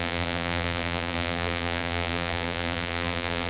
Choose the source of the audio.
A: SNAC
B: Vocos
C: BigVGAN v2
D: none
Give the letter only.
C